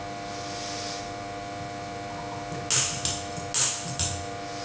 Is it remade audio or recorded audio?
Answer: recorded